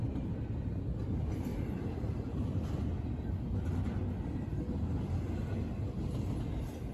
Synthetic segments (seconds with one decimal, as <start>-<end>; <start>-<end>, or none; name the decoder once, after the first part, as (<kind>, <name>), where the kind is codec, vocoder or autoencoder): 1.5-2.8 (vocoder, BigVGAN v2)